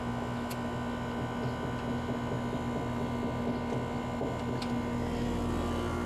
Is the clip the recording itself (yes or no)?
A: yes